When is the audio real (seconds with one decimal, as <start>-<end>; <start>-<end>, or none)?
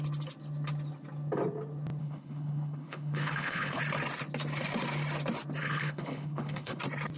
0.0-2.0; 3.8-5.6; 6.8-7.2